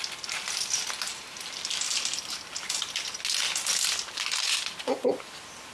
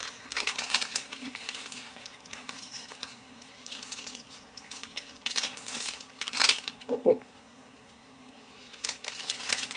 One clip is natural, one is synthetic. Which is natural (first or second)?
first